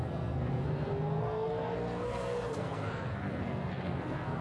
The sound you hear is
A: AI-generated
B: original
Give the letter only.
A